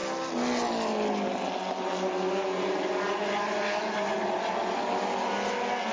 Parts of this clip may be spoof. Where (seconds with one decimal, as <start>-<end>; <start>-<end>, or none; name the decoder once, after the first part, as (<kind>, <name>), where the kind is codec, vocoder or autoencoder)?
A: none